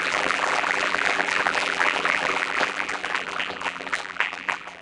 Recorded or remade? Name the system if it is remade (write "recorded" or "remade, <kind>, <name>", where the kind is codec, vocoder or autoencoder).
remade, vocoder, BigVGAN v2